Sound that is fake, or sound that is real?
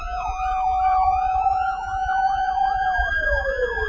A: fake